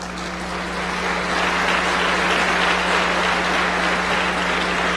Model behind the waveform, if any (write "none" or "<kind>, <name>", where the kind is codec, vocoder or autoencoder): none